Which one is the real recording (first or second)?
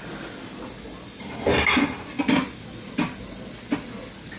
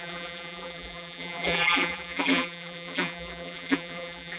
first